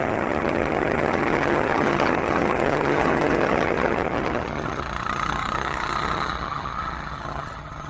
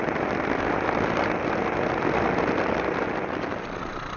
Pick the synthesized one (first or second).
first